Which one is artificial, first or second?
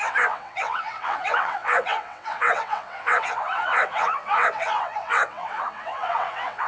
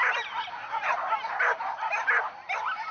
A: first